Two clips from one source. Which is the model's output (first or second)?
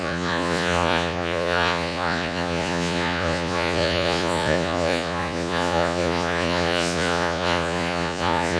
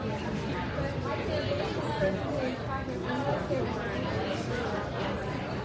first